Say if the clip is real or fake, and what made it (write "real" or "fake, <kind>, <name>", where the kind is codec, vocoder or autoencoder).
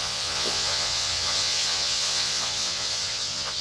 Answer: fake, vocoder, Vocos